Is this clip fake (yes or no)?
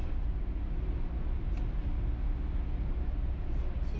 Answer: no